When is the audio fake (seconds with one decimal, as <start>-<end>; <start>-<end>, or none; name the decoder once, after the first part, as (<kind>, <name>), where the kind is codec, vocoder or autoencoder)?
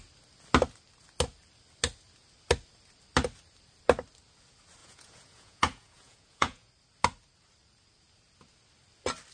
4.8-6.7 (vocoder, Vocos)